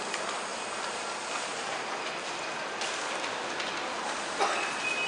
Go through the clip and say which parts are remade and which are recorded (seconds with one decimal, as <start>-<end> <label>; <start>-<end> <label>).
0.0-5.1 recorded